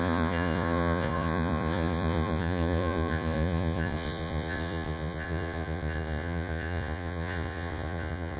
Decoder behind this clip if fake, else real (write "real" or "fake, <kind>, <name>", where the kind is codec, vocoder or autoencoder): fake, vocoder, Vocos